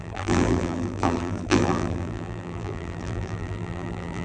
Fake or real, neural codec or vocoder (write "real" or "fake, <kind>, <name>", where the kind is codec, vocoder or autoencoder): fake, vocoder, BigVGAN v2